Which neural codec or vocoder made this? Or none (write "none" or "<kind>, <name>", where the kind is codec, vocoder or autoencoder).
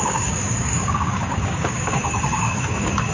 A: codec, DAC